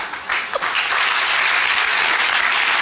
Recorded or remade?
recorded